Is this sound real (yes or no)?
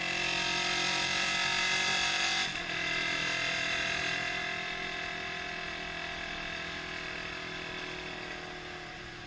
yes